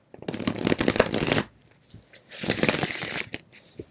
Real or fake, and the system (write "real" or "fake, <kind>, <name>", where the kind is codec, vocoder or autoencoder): real